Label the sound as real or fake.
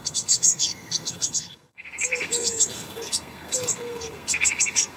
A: fake